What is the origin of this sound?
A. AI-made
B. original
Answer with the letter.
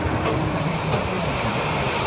B